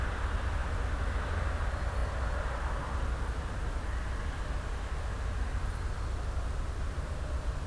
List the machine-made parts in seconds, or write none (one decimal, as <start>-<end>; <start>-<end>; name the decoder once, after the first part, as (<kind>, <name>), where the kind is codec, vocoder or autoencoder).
none